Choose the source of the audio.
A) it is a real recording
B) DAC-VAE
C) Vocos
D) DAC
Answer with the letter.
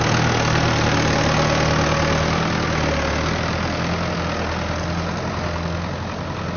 A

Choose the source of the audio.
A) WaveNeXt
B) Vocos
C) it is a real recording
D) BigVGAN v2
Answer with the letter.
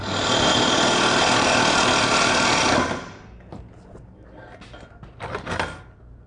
C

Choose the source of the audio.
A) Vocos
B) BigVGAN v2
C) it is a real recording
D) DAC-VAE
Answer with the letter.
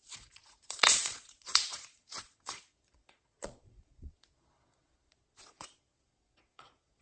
A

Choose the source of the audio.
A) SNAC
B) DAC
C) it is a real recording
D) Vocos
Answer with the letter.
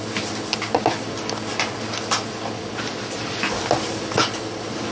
C